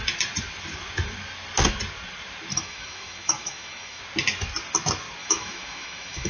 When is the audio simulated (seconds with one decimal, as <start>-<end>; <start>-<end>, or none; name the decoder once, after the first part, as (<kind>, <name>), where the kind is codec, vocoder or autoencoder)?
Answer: 2.5-4.0 (autoencoder, DAC-VAE); 5.2-6.3